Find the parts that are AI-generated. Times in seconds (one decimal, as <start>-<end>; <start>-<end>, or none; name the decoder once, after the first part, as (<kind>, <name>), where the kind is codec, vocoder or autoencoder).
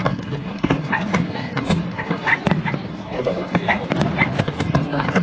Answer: 0.0-2.3 (codec, SNAC); 2.9-3.8; 4.4-5.2